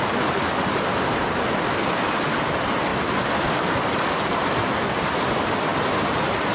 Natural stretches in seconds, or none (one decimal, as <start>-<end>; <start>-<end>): 0.0-5.7